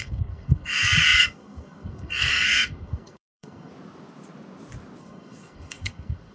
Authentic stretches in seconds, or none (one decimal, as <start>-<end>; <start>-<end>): 3.7-5.0